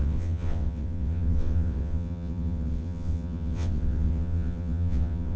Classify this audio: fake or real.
fake